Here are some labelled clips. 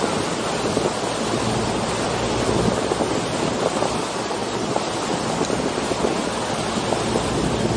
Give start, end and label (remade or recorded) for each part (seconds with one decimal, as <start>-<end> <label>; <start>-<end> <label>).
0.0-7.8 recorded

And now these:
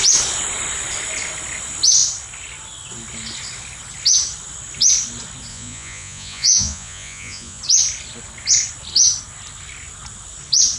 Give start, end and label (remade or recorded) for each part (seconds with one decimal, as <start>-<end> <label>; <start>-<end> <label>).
0.0-5.5 recorded; 5.5-7.6 remade; 7.6-10.8 recorded

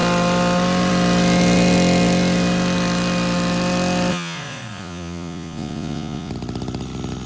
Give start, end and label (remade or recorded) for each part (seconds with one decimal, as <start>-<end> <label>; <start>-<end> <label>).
0.0-4.1 recorded; 4.1-6.3 remade; 6.3-7.3 recorded

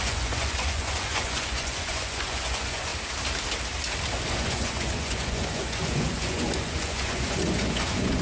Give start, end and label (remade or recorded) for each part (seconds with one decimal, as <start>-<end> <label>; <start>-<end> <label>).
0.0-2.9 remade; 2.9-4.3 recorded; 4.3-8.2 remade

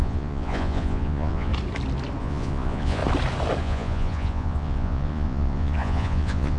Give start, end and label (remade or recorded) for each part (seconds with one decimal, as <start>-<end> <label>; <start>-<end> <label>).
0.0-1.5 remade; 1.5-2.2 recorded; 2.2-3.0 remade; 3.0-3.6 recorded; 3.6-6.6 remade

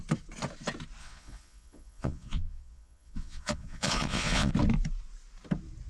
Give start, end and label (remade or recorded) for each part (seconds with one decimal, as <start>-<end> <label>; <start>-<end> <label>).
0.0-1.0 recorded; 1.0-4.5 remade; 4.5-5.9 recorded

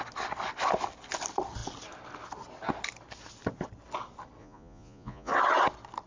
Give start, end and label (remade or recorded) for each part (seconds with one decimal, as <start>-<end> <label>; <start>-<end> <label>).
0.0-4.4 recorded; 4.4-5.3 remade; 5.3-6.1 recorded